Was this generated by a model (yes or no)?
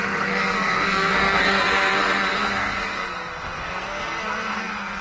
yes